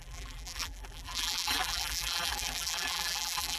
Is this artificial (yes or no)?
yes